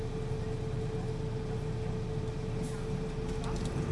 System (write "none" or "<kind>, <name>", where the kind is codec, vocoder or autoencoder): none